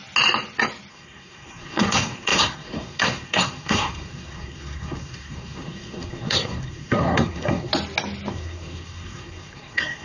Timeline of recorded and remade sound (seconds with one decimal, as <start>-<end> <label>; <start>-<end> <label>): 0.0-0.9 recorded; 0.9-7.7 remade; 7.7-8.3 recorded; 8.3-10.0 remade

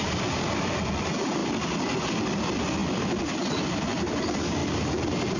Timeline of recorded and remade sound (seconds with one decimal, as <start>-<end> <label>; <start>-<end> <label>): 0.0-5.4 recorded

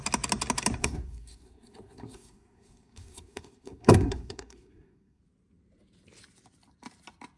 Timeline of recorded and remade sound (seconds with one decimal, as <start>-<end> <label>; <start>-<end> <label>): 0.0-0.8 recorded; 0.8-5.2 remade; 5.2-7.4 recorded

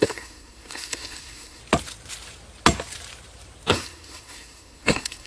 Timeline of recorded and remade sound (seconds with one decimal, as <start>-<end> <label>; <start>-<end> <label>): 0.0-1.6 remade; 1.6-3.7 recorded; 3.7-5.3 remade

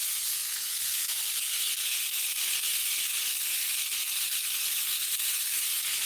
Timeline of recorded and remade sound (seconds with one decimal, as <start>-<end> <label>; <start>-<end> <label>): 0.0-6.1 remade

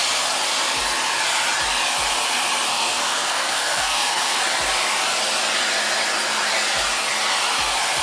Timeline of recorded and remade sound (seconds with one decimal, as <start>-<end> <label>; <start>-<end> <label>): 0.0-2.7 recorded; 2.7-4.4 remade; 4.4-8.0 recorded

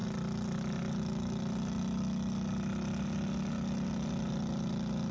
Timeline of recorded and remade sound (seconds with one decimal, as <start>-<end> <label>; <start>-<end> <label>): 0.0-5.1 recorded

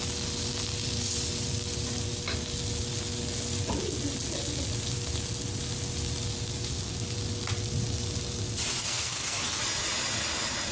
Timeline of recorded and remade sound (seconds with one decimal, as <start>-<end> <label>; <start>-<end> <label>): 0.0-8.8 recorded; 8.8-9.6 remade; 9.6-10.7 recorded